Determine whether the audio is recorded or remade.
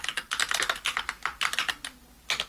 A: recorded